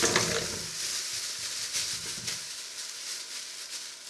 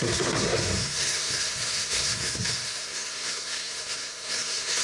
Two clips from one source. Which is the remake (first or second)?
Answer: second